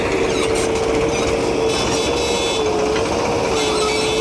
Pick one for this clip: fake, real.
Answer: real